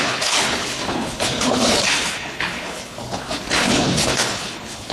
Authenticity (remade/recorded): remade